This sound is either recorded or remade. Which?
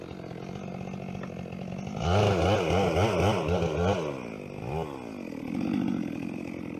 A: recorded